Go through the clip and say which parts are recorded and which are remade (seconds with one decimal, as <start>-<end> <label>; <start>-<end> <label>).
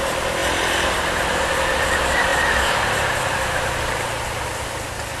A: 0.0-5.2 recorded